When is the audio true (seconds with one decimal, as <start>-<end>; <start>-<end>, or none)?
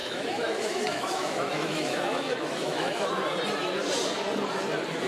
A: 3.1-5.1